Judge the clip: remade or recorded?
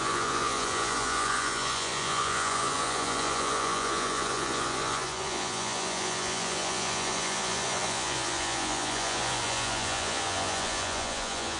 remade